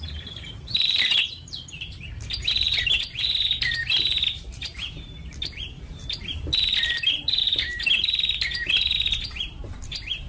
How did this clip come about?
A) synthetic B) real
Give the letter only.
A